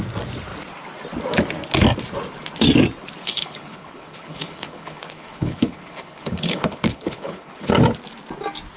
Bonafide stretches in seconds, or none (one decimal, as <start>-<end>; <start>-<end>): 0.0-3.2; 7.7-8.8